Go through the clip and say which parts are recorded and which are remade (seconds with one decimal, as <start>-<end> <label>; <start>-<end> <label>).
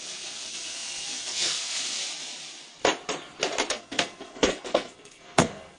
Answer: 0.0-2.0 remade; 2.0-3.7 recorded; 3.7-5.8 remade